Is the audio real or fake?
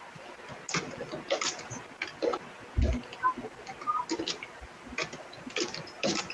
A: real